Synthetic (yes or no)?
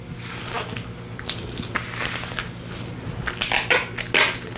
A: no